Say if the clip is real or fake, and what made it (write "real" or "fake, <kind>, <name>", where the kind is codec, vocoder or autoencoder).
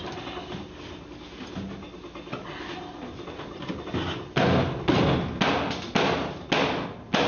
real